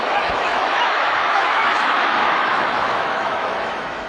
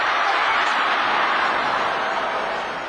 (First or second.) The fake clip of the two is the first